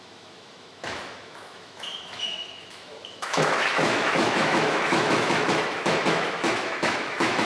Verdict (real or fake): fake